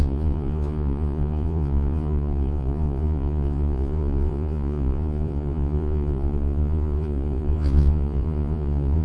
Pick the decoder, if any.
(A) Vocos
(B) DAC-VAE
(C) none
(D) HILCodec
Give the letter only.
A